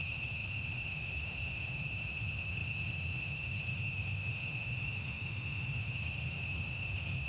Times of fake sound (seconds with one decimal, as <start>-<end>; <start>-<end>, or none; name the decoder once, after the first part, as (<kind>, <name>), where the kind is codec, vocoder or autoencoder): 0.0-7.3 (autoencoder, DAC-VAE)